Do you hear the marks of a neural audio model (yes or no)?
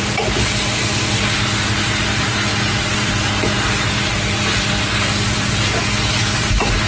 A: no